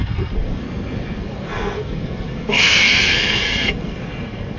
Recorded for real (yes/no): no